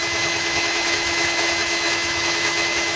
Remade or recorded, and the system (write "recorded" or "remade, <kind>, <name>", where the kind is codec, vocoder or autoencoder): remade, autoencoder, DAC-VAE